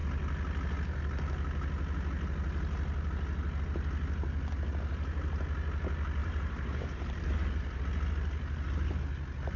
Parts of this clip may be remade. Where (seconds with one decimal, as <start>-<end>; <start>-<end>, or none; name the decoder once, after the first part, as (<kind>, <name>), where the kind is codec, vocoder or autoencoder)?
6.2-7.8 (vocoder, BigVGAN v2)